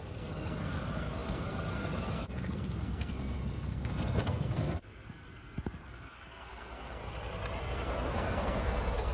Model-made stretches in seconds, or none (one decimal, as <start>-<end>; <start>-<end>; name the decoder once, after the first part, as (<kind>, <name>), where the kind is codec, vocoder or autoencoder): 0.0-7.0 (codec, SNAC); 7.6-9.1

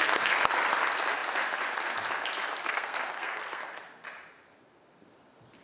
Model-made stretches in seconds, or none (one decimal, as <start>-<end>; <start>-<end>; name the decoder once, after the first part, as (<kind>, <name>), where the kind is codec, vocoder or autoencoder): 2.6-3.6 (codec, SNAC)

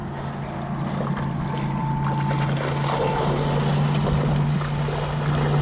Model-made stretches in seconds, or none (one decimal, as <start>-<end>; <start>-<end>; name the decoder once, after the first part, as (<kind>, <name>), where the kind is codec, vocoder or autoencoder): none

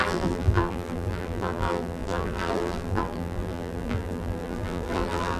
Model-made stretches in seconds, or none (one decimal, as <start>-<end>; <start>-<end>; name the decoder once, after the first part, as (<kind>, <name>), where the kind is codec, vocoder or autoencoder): 0.0-5.4 (vocoder, BigVGAN v2)

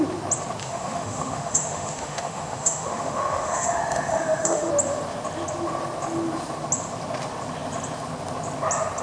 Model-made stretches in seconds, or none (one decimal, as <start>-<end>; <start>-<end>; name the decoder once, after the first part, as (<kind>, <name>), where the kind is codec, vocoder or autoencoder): 0.6-4.7 (autoencoder, DAC-VAE)